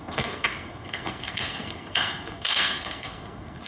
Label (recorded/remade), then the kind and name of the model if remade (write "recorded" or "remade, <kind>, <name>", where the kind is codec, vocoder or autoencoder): remade, codec, SNAC